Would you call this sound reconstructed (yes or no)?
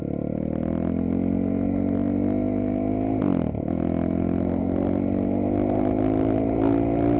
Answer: no